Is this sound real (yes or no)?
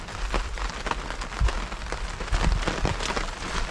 yes